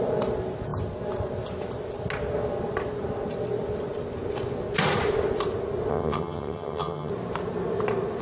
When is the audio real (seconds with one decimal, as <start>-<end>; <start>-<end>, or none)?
0.0-5.9; 7.1-8.2

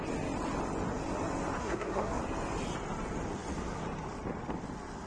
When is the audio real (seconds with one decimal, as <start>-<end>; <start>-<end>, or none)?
0.0-1.6; 2.2-5.1